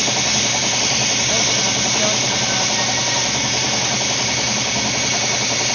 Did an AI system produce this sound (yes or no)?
no